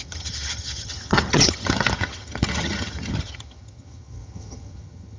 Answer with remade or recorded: remade